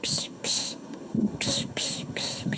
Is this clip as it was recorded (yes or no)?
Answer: no